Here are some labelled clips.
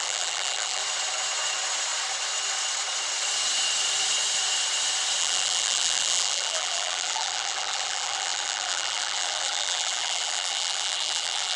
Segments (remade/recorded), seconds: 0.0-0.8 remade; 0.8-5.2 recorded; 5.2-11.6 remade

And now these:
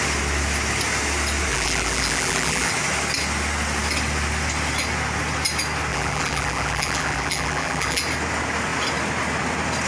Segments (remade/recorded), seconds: 0.0-1.5 recorded; 1.5-2.7 remade; 2.7-5.9 recorded; 5.9-8.0 remade; 8.0-9.9 recorded

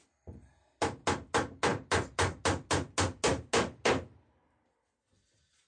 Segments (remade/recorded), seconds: 0.0-5.7 recorded

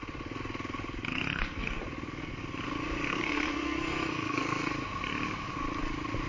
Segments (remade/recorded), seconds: 0.0-1.1 recorded; 1.1-1.8 remade; 1.8-3.1 recorded; 3.1-4.7 remade; 4.7-6.3 recorded

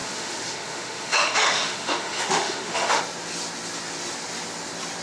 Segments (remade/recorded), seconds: 0.0-3.0 remade; 3.0-5.0 recorded

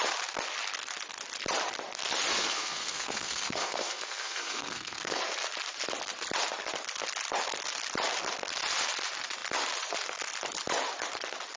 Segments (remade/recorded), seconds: 0.0-2.3 recorded; 2.3-5.2 remade; 5.2-11.6 recorded